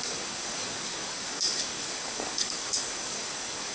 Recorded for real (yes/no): no